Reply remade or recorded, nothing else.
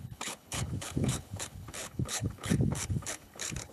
remade